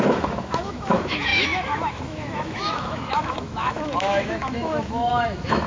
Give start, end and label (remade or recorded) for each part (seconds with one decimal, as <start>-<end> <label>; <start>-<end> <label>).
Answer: 0.0-5.7 remade